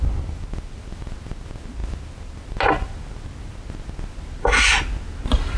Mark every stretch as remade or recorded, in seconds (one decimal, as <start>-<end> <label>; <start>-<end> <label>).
0.0-5.6 recorded